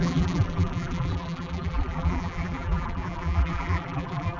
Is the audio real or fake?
fake